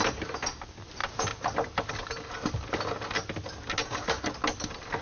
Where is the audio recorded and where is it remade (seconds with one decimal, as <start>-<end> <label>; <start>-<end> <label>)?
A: 0.0-5.0 recorded